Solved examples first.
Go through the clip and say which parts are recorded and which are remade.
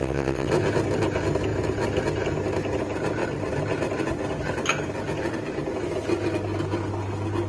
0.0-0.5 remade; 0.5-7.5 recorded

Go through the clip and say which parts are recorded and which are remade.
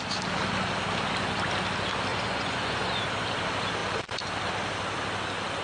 0.0-2.1 recorded; 2.1-3.0 remade; 3.0-5.6 recorded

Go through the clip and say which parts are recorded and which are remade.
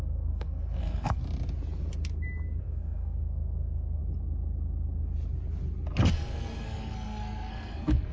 0.0-1.2 remade; 1.2-2.6 recorded; 2.6-4.0 remade; 4.0-6.1 recorded; 6.1-8.1 remade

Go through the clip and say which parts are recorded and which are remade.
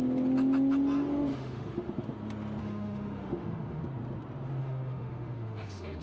0.0-1.3 recorded; 1.3-1.9 remade; 1.9-2.6 recorded; 2.6-3.8 remade; 3.8-4.6 recorded; 4.6-6.0 remade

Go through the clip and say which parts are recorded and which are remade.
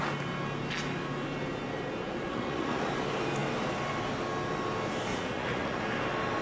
0.0-2.3 recorded; 2.3-2.9 remade; 2.9-5.1 recorded; 5.1-5.8 remade; 5.8-6.4 recorded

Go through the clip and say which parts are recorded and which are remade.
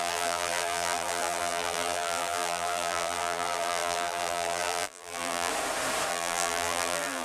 0.0-5.5 remade; 5.5-6.1 recorded; 6.1-7.2 remade